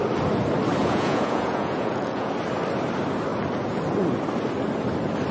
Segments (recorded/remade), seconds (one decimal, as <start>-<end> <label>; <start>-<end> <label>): 0.0-0.8 recorded; 0.8-2.3 remade; 2.3-5.3 recorded